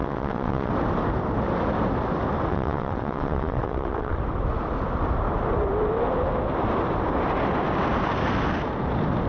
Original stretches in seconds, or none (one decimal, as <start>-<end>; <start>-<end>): 0.7-2.5; 4.2-9.3